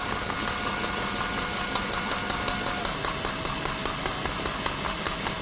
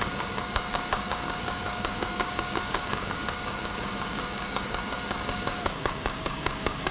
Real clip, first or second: first